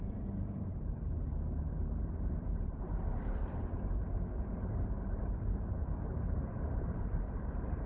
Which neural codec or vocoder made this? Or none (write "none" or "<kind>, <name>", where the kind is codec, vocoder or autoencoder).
vocoder, BigVGAN v2